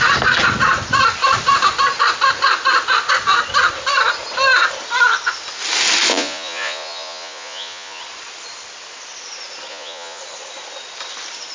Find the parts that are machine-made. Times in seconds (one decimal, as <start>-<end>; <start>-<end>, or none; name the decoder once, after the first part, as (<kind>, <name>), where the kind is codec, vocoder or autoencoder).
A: 6.1-8.0 (vocoder, Vocos); 9.7-10.2